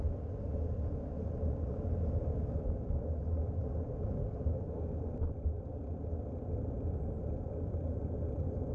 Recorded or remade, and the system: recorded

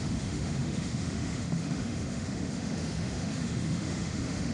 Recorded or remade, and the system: remade, autoencoder, DAC-VAE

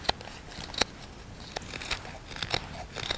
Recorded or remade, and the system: recorded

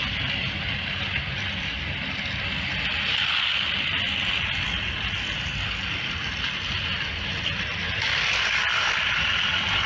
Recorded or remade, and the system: recorded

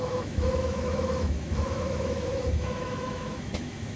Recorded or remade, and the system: remade, autoencoder, DAC-VAE